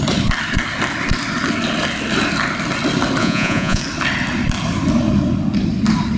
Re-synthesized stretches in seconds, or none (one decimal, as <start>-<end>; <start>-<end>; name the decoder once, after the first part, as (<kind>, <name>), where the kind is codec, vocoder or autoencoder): 3.2-3.8 (vocoder, Vocos)